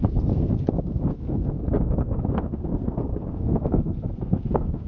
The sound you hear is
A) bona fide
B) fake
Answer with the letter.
B